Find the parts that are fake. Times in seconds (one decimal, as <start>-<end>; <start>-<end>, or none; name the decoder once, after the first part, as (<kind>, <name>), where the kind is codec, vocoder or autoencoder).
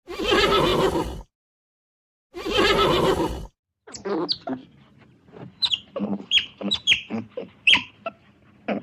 4.6-7.9 (vocoder, BigVGAN v2)